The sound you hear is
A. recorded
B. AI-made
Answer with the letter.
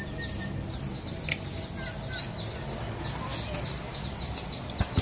A